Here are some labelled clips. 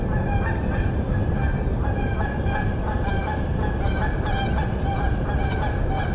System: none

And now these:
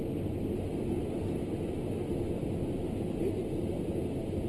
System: none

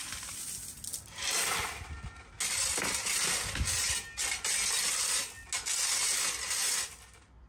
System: none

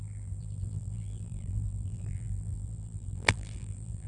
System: vocoder, BigVGAN v2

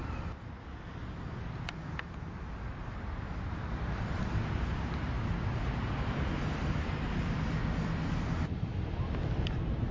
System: none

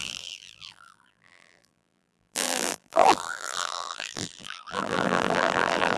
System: vocoder, BigVGAN v2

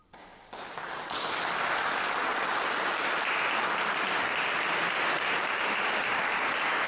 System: vocoder, BigVGAN v2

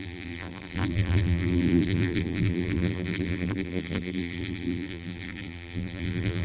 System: vocoder, BigVGAN v2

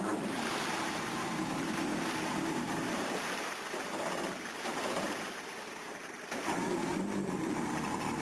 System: vocoder, BigVGAN v2